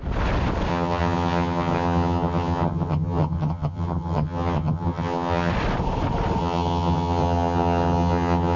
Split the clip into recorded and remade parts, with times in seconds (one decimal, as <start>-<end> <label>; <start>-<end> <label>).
0.0-0.7 recorded; 0.7-5.5 remade; 5.5-6.4 recorded; 6.4-8.6 remade